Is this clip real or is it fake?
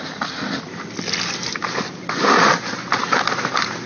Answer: real